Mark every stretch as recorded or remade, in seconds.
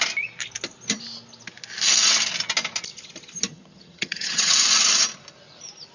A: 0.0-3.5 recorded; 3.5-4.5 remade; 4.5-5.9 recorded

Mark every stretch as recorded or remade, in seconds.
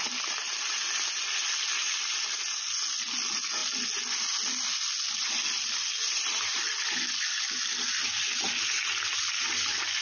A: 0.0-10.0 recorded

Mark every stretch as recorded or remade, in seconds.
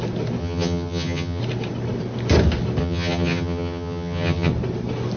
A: 0.0-0.4 recorded; 0.4-1.4 remade; 1.4-2.8 recorded; 2.8-4.5 remade; 4.5-5.2 recorded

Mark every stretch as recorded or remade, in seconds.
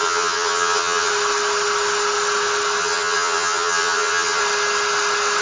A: 0.0-1.1 remade; 1.1-2.8 recorded; 2.8-4.4 remade; 4.4-5.4 recorded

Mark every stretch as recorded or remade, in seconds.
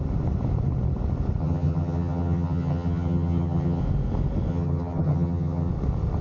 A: 0.0-1.4 recorded; 1.4-3.8 remade; 3.8-4.5 recorded; 4.5-5.7 remade; 5.7-6.2 recorded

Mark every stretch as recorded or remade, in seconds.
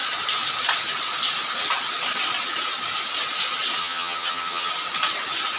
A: 0.0-3.8 recorded; 3.8-4.7 remade; 4.7-5.6 recorded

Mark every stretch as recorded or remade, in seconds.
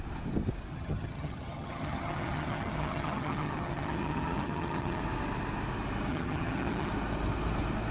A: 0.0-0.7 recorded; 0.7-5.0 remade; 5.0-6.1 recorded; 6.1-6.9 remade; 6.9-7.9 recorded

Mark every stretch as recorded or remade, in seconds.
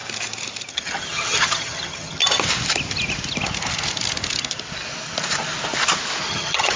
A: 0.0-0.7 recorded; 0.7-2.2 remade; 2.2-6.3 recorded; 6.3-6.8 remade